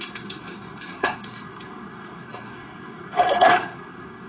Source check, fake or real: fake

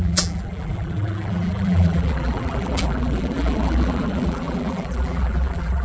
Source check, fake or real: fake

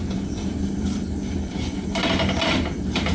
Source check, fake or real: fake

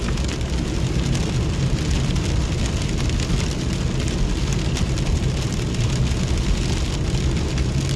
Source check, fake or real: real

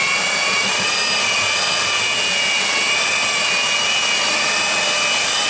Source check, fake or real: real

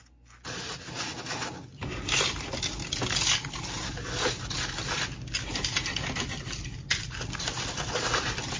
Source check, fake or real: real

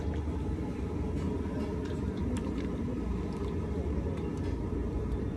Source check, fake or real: real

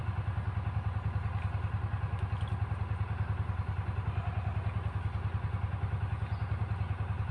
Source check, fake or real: real